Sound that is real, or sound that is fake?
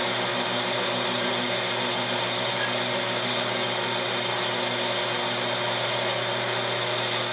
real